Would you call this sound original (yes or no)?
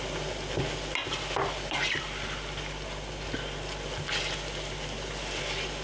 yes